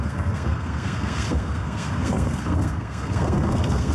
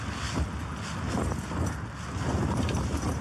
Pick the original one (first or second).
second